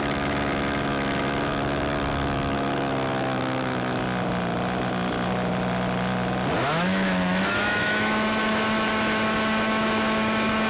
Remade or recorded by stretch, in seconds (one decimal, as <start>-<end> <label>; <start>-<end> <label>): 0.0-4.0 remade; 4.0-6.6 recorded; 6.6-10.7 remade